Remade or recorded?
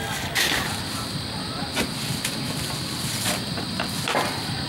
recorded